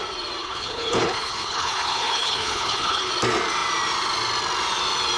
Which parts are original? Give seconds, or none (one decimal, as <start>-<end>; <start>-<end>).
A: 0.0-0.4; 3.1-5.2